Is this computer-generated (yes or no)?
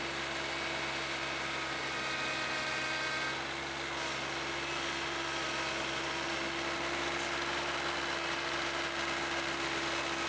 no